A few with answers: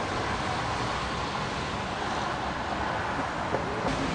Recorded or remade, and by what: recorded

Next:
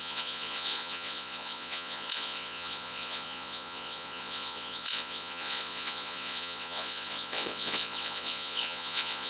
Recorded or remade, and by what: remade, vocoder, Vocos